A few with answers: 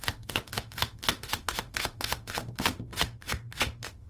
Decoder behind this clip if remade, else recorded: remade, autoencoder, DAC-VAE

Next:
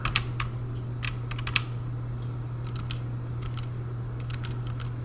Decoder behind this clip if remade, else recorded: recorded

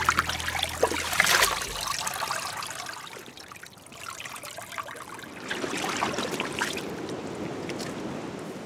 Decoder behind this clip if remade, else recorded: recorded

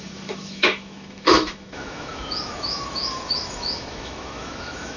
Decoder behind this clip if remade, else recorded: remade, autoencoder, DAC-VAE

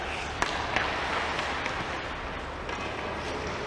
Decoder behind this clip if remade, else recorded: recorded